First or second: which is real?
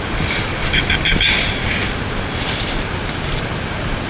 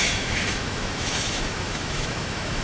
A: first